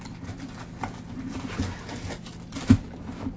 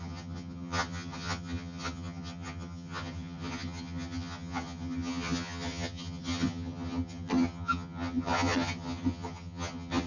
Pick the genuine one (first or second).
first